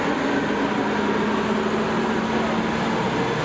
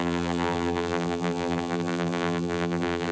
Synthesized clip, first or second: second